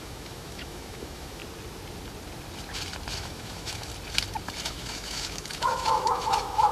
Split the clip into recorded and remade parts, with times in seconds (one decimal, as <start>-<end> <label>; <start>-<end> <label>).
0.0-1.4 remade; 1.4-3.1 recorded; 3.1-3.9 remade; 3.9-4.7 recorded; 4.7-6.7 remade